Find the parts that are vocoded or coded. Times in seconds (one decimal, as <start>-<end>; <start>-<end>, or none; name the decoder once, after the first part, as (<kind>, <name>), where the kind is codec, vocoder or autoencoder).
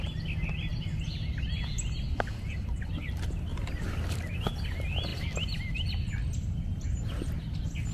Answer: 3.5-4.0 (vocoder, BigVGAN v2)